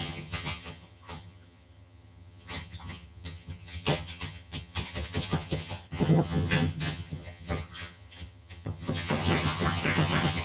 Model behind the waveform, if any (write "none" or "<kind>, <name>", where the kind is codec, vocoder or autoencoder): vocoder, HiFi-GAN